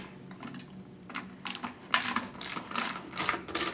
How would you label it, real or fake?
real